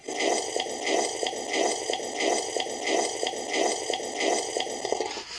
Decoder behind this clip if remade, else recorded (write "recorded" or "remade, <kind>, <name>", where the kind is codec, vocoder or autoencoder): recorded